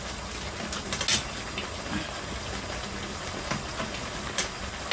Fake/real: real